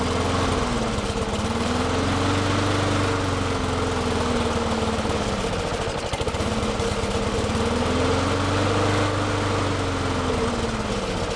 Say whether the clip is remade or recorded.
recorded